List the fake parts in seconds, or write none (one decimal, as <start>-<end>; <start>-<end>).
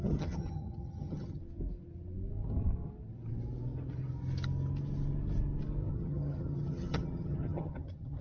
0.0-1.4; 5.9-8.2